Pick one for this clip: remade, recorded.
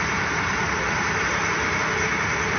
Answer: recorded